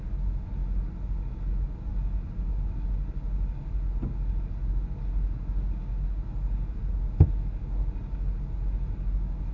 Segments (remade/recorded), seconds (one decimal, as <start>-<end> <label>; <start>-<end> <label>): 0.0-9.5 recorded